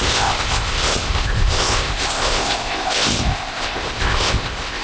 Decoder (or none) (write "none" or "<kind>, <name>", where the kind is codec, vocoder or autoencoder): codec, ZipCodec